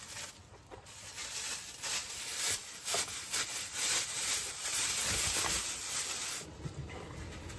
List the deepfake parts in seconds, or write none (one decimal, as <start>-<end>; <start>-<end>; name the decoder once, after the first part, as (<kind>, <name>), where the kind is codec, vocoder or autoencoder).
2.3-5.1 (vocoder, BigVGAN v2)